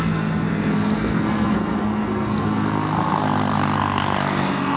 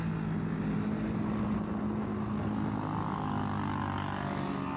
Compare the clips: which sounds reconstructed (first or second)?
first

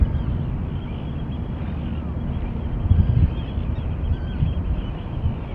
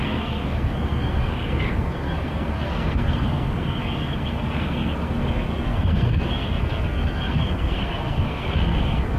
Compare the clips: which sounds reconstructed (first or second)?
second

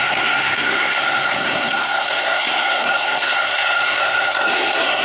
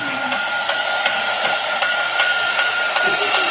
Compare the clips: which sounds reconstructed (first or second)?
first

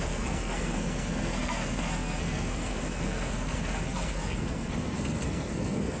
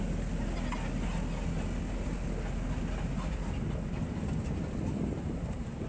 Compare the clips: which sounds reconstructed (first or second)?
first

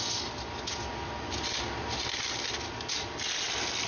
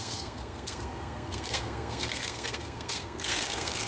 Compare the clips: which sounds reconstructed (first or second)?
second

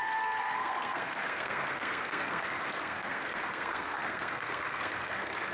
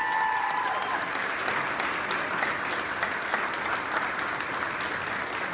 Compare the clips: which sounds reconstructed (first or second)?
first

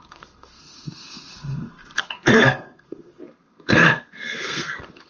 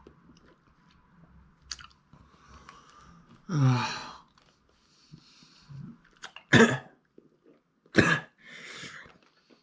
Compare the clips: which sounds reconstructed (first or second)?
first